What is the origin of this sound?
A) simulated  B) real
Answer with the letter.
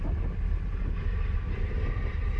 B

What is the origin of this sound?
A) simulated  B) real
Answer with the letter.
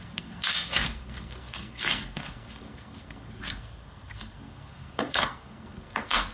A